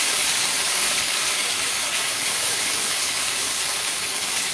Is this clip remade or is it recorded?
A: remade